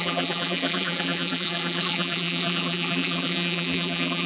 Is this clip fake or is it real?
fake